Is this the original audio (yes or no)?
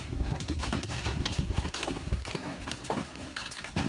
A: no